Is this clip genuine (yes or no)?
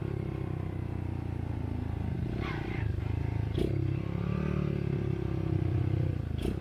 yes